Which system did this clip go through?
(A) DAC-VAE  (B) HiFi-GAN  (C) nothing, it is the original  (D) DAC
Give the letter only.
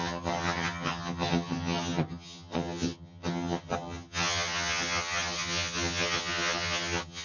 B